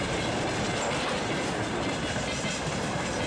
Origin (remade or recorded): recorded